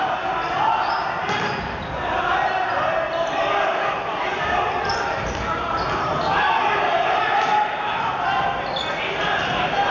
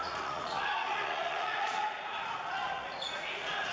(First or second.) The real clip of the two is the first